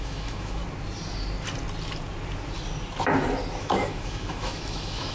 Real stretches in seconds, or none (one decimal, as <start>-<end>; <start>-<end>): 0.6-3.6